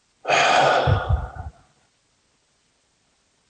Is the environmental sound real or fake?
real